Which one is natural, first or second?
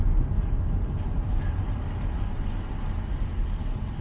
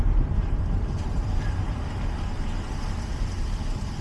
first